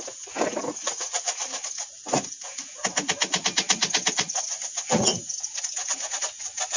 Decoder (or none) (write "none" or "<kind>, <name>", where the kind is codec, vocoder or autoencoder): vocoder, BigVGAN v2